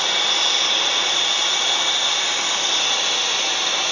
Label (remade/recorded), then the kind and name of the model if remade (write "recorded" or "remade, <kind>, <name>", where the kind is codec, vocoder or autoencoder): recorded